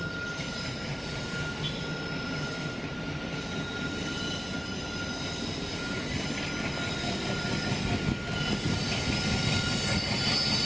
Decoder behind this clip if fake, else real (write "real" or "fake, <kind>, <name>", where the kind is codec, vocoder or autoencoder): real